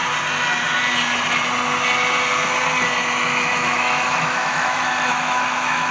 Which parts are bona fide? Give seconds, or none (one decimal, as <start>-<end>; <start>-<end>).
0.0-3.5